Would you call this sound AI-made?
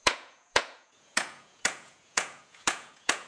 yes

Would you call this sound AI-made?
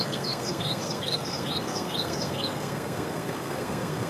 yes